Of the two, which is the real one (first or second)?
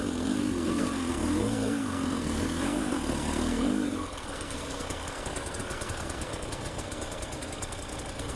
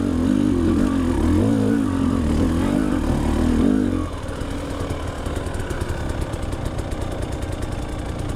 second